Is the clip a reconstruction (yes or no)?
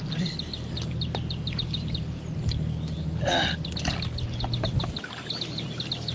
no